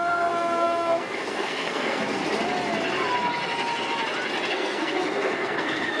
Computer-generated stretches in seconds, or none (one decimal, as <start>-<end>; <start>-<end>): 0.0-2.2; 4.5-6.0